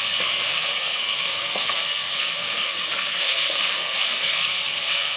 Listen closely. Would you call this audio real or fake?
fake